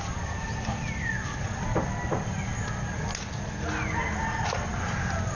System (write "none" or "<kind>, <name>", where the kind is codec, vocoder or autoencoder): none